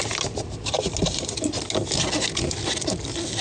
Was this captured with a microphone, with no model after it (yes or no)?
yes